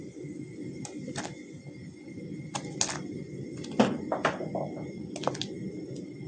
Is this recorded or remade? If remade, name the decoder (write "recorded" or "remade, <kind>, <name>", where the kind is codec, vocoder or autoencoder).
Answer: recorded